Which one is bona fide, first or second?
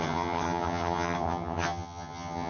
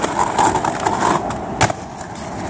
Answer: second